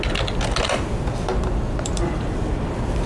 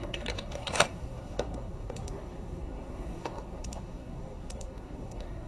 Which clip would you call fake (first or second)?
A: second